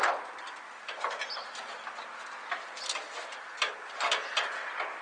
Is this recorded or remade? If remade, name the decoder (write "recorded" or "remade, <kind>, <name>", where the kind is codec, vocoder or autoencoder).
recorded